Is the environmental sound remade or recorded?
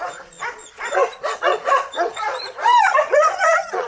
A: remade